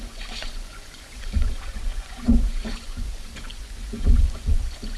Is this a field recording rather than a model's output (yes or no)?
no